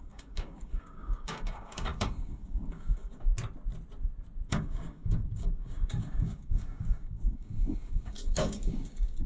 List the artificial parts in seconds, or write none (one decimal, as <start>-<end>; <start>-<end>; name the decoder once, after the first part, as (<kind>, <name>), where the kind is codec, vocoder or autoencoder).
0.0-3.3 (codec, DAC); 4.5-9.3

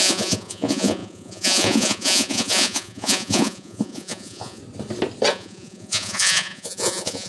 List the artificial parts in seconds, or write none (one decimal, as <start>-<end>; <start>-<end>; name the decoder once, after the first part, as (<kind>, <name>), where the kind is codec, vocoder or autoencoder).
0.0-4.6 (vocoder, Vocos); 5.3-7.3

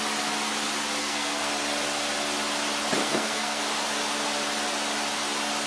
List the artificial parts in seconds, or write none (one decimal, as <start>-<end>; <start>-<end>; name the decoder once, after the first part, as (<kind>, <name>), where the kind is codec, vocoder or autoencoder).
1.0-1.5 (codec, SNAC); 3.0-3.6

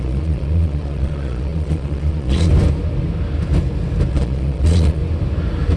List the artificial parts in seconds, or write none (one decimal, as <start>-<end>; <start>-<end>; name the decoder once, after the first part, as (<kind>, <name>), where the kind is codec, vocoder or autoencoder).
0.0-2.5 (vocoder, Vocos); 4.1-5.0